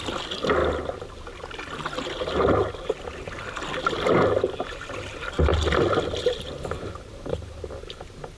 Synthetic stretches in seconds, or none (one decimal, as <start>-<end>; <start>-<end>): none